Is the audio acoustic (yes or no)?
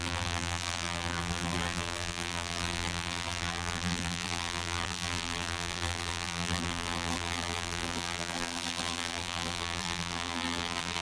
no